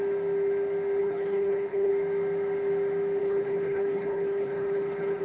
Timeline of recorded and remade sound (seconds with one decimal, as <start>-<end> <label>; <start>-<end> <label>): 0.0-1.0 recorded; 1.0-1.9 remade; 1.9-3.2 recorded; 3.2-5.2 remade